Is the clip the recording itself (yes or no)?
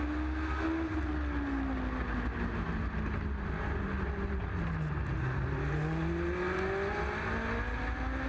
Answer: yes